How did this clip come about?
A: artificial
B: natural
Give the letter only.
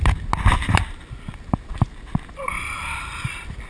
B